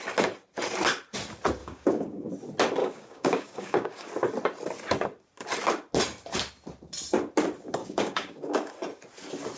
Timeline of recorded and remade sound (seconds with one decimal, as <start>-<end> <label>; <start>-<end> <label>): 0.0-1.6 recorded; 1.6-2.3 remade; 2.3-2.8 recorded; 2.8-4.1 remade; 4.1-7.8 recorded; 7.8-8.7 remade; 8.7-9.6 recorded